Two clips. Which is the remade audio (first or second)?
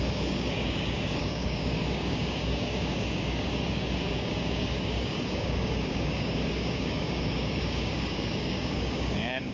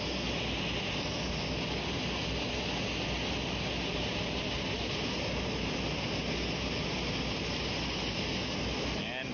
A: first